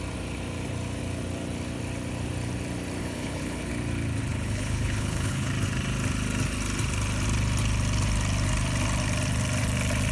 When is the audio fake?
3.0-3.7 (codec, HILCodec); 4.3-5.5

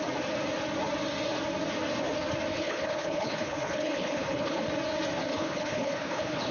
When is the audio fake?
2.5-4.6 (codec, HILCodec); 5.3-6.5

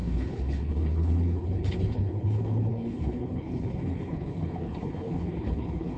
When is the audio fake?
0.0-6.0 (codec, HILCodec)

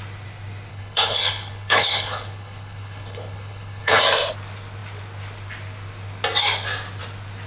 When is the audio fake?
0.7-4.0 (codec, HILCodec)

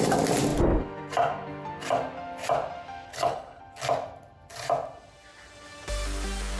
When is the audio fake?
3.1-3.6 (codec, HILCodec)